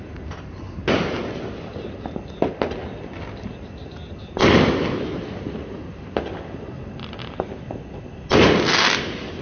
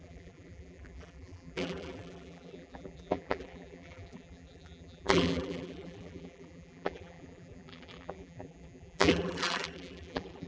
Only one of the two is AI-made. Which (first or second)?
second